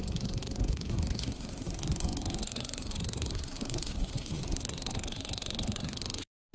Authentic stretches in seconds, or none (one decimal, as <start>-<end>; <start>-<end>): none